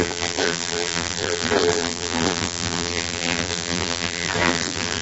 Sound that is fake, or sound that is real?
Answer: fake